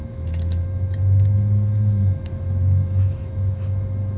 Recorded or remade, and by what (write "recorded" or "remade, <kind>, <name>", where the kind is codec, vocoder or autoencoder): remade, autoencoder, DAC-VAE